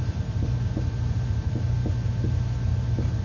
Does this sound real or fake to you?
real